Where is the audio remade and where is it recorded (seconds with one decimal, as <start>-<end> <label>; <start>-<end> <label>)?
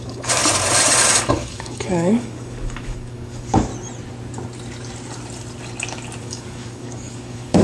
0.0-0.4 remade; 0.4-1.3 recorded; 1.3-3.7 remade; 3.7-6.2 recorded; 6.2-7.6 remade